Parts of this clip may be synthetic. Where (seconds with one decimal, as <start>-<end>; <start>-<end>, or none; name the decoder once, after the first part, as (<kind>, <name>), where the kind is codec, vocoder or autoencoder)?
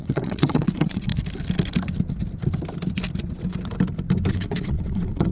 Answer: 0.0-1.1 (vocoder, WaveNeXt); 4.3-5.3